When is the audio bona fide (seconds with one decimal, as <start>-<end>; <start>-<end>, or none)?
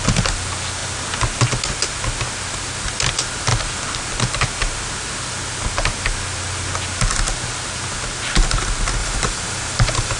0.0-9.0